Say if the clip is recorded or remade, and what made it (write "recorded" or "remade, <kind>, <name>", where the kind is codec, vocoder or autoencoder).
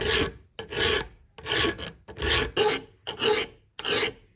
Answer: recorded